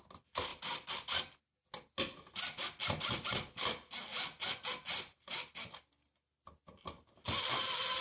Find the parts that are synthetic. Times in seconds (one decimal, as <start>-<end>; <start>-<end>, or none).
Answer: none